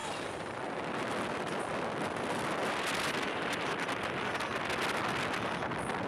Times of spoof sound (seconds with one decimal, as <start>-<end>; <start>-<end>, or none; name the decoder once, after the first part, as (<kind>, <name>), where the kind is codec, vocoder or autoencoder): 0.0-3.7 (vocoder, BigVGAN v2)